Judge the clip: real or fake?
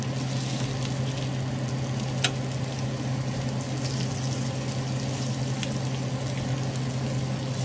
real